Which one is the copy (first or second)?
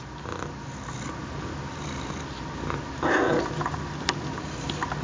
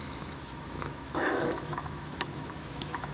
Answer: second